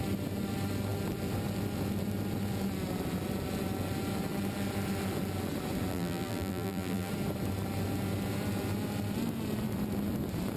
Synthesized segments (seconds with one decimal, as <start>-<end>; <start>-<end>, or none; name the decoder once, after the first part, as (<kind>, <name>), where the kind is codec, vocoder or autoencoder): 5.9-7.1 (vocoder, BigVGAN v2)